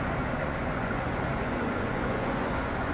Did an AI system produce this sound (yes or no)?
yes